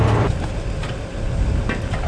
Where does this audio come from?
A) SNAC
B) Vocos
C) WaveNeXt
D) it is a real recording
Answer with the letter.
D